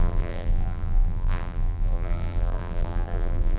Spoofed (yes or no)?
yes